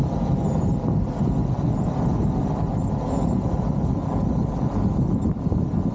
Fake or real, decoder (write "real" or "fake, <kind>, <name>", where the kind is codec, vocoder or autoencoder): real